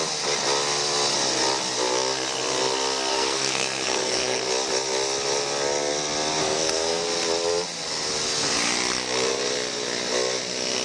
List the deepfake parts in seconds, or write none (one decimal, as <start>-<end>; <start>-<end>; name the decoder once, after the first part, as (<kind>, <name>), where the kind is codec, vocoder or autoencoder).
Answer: 3.1-4.4 (codec, SNAC); 6.4-7.0